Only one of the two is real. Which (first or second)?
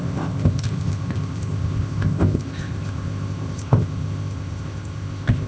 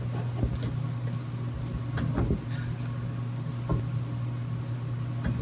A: second